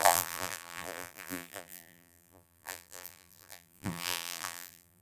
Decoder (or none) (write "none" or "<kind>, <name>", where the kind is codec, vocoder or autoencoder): vocoder, BigVGAN v2